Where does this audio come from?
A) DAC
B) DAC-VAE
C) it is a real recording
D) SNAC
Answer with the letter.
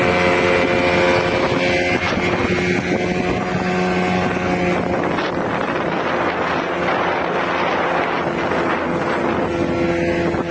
C